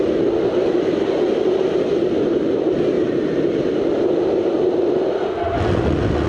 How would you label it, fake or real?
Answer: real